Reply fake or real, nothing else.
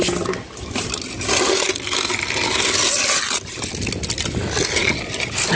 real